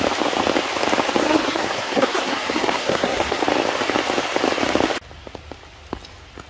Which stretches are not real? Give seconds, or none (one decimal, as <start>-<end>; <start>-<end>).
1.2-3.4